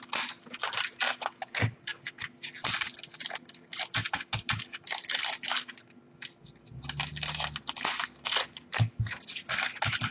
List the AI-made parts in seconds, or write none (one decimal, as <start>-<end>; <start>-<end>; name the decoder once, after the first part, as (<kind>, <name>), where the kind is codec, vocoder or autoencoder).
none